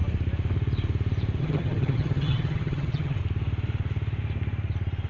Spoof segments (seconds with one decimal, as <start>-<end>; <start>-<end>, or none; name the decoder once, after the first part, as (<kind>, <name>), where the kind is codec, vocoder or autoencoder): 1.4-3.2 (vocoder, HiFi-GAN)